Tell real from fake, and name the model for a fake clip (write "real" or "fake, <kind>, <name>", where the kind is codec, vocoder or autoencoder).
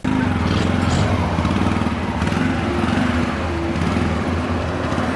real